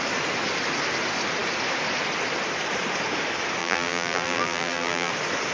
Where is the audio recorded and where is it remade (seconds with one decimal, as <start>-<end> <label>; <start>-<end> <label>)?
0.0-3.6 recorded; 3.6-5.1 remade; 5.1-5.5 recorded

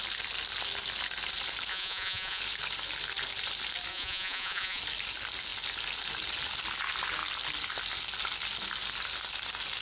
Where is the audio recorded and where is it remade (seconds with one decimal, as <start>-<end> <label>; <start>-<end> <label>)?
0.0-1.7 recorded; 1.7-2.4 remade; 2.4-3.9 recorded; 3.9-4.8 remade; 4.8-9.8 recorded

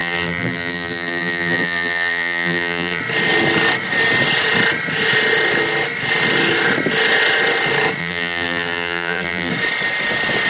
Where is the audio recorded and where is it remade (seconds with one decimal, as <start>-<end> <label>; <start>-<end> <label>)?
0.0-3.0 remade; 3.0-8.0 recorded; 8.0-9.5 remade; 9.5-10.5 recorded

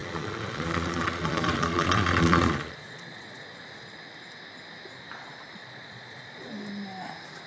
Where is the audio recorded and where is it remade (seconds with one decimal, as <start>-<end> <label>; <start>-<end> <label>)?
0.0-3.6 remade; 3.6-5.6 recorded; 5.6-6.5 remade; 6.5-7.5 recorded

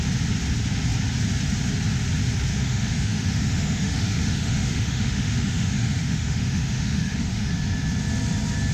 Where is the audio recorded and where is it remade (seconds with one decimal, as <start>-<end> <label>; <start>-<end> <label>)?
0.0-2.5 recorded; 2.5-7.5 remade; 7.5-8.7 recorded

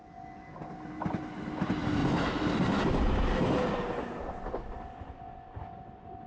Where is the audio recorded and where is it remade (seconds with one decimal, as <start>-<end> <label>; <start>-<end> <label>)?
0.0-6.3 recorded